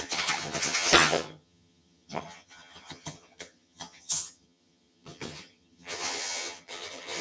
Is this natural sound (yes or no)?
no